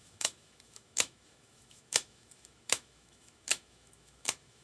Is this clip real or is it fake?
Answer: fake